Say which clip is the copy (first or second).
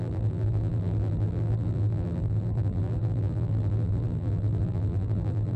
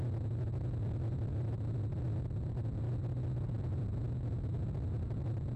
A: first